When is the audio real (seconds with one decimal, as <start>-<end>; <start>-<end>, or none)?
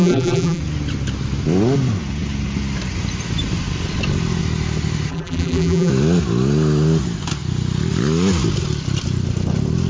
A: 0.6-5.1; 5.9-9.9